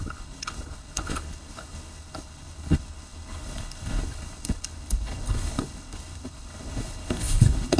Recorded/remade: remade